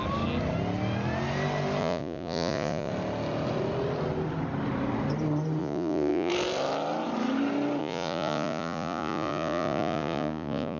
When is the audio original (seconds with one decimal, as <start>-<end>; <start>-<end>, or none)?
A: 0.0-1.8; 2.9-5.6; 6.3-7.8